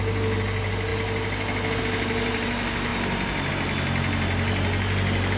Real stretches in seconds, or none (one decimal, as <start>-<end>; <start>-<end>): 0.0-5.4